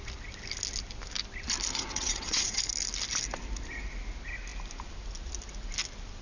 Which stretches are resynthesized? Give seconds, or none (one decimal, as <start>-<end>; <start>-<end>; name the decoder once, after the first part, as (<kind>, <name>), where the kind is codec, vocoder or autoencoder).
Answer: 1.9-2.6 (vocoder, WaveNeXt)